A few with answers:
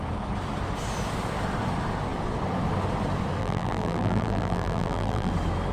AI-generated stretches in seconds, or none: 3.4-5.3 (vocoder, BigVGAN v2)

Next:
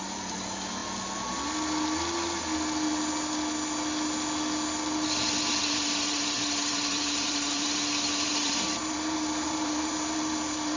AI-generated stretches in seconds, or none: 0.0-0.8 (vocoder, BigVGAN v2); 5.5-10.8

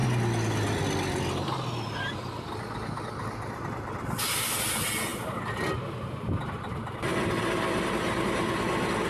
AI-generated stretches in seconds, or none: none

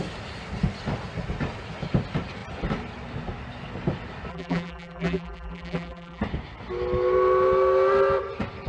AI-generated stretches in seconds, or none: 4.3-6.2 (vocoder, BigVGAN v2)